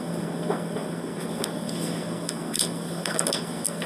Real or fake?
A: fake